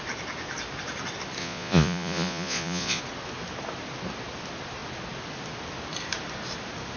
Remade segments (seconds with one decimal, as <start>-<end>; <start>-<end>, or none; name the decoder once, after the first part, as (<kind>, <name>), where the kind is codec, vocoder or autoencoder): 1.4-3.0 (vocoder, Vocos)